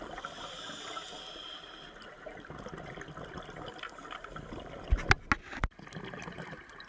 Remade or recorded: recorded